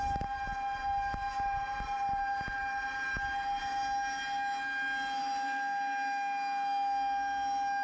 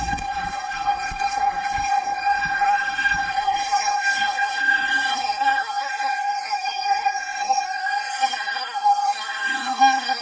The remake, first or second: second